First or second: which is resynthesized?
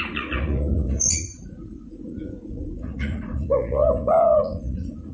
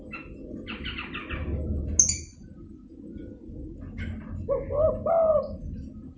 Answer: first